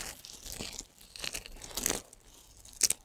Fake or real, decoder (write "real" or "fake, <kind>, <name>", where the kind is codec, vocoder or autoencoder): real